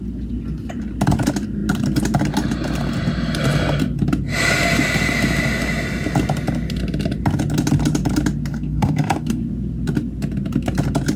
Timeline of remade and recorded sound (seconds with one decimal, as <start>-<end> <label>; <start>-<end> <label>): 0.0-8.5 recorded; 8.5-9.4 remade; 9.4-11.2 recorded